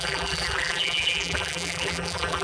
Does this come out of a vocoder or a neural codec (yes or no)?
yes